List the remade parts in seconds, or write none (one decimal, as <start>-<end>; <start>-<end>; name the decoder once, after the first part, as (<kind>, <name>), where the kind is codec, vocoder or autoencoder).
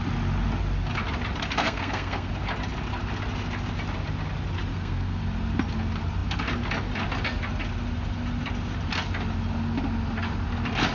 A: 1.6-2.3 (codec, SNAC); 4.7-5.2